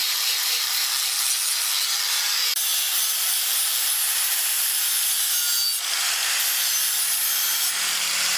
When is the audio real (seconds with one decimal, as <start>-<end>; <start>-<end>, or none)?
0.9-2.7; 5.1-8.4